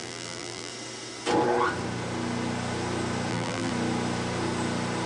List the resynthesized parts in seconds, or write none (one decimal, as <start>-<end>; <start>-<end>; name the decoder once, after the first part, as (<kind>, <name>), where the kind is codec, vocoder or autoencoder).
0.0-0.7 (vocoder, BigVGAN v2); 3.3-3.7